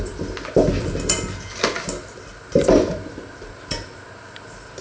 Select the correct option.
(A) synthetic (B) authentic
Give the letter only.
B